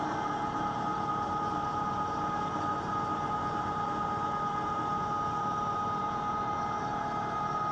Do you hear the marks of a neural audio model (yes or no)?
yes